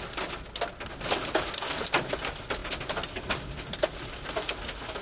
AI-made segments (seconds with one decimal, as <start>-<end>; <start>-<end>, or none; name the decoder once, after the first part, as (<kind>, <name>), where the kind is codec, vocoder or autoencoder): none